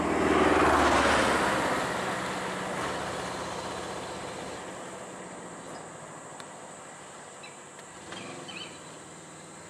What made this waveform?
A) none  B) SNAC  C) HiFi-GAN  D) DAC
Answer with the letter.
A